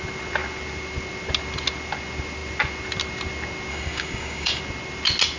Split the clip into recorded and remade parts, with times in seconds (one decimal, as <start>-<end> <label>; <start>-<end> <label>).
0.0-3.7 recorded; 3.7-4.6 remade; 4.6-5.4 recorded